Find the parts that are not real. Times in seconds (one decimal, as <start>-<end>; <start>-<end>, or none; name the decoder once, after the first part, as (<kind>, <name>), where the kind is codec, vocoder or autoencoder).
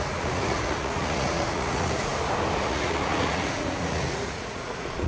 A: 0.0-2.1 (vocoder, Vocos); 2.6-5.1